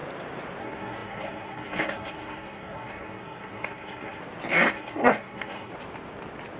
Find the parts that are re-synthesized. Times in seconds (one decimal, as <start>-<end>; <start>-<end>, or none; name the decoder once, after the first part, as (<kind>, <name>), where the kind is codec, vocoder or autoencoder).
0.6-4.2 (codec, SNAC); 4.7-5.7